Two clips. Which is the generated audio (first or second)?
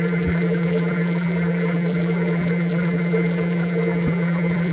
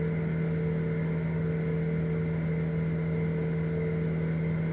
first